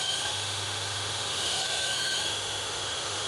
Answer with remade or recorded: remade